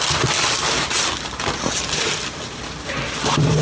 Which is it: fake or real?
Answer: real